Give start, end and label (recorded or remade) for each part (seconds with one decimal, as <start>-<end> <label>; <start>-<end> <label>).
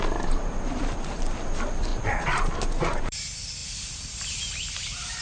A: 0.0-1.9 recorded; 1.9-3.2 remade; 3.2-5.2 recorded